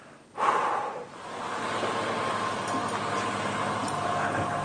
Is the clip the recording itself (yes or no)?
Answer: yes